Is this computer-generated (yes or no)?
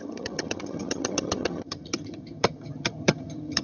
yes